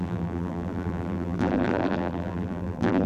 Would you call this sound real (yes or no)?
no